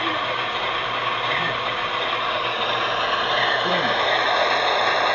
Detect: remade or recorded recorded